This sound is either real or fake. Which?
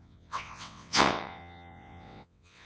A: fake